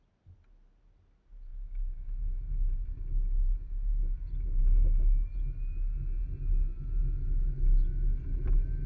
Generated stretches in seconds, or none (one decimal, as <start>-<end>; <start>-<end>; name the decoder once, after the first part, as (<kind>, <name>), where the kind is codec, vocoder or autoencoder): none